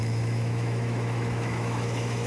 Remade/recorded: remade